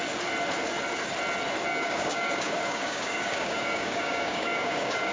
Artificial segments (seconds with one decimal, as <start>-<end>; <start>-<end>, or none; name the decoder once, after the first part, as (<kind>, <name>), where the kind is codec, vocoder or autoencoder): 1.7-5.1 (codec, DAC)

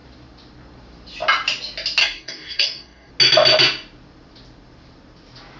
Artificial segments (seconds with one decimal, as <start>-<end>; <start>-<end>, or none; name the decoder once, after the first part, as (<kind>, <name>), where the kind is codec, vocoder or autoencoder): 2.0-3.1 (codec, DAC)

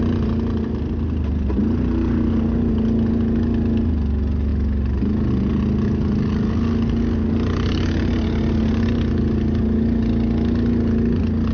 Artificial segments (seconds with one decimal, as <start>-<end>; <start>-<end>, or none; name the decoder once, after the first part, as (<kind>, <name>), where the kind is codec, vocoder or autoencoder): none